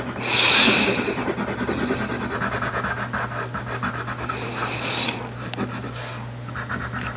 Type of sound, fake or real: real